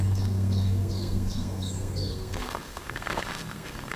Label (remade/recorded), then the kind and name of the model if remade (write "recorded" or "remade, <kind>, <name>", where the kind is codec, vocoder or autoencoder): remade, codec, SNAC